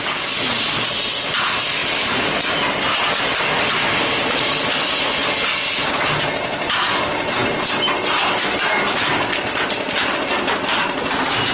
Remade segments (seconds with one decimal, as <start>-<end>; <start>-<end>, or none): none